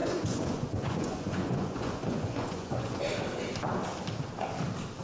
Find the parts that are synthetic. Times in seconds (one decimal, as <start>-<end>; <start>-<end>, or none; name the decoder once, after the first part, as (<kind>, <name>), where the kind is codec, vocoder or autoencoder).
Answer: 0.0-3.0 (vocoder, Vocos)